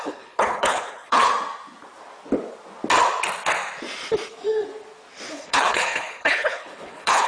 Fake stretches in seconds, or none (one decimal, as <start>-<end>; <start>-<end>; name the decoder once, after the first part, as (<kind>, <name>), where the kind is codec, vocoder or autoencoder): 0.0-1.3 (codec, HILCodec); 5.3-7.3